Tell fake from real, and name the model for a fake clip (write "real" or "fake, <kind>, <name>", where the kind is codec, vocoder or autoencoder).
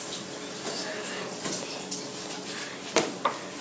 real